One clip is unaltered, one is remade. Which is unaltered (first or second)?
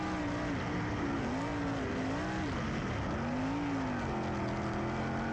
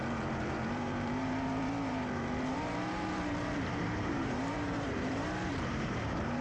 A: first